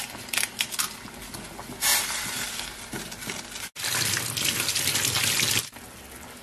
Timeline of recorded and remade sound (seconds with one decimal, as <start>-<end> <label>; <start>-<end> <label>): 0.0-6.4 recorded